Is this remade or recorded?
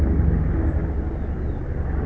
recorded